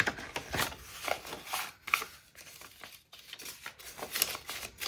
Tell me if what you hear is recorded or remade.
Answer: recorded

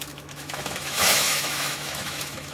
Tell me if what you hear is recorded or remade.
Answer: remade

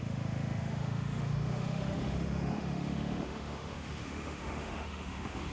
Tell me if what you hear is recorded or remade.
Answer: remade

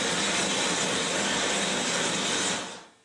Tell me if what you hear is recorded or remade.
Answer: recorded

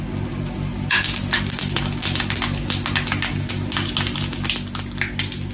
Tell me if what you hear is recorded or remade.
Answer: recorded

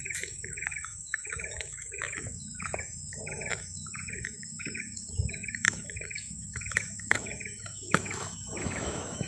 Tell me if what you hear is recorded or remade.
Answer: remade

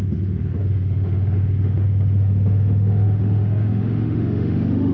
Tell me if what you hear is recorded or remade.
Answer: remade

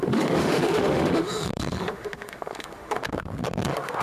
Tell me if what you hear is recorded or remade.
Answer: remade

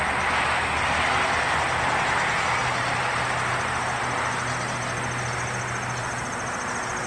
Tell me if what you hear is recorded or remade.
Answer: recorded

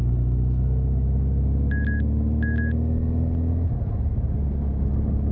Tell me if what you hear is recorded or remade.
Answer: recorded